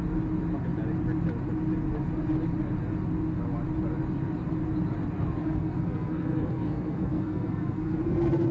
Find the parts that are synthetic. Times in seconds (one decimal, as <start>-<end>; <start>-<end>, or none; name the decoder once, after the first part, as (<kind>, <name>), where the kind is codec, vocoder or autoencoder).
5.4-8.5 (codec, SNAC)